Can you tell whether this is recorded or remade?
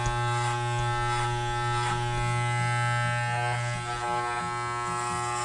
recorded